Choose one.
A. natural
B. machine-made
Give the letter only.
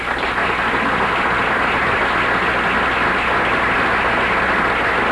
A